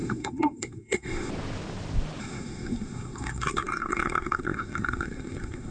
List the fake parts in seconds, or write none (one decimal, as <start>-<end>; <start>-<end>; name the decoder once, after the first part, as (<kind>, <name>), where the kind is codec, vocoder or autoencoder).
0.0-1.3 (codec, SNAC); 2.2-5.7